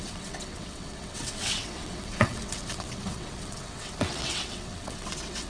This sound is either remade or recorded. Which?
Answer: remade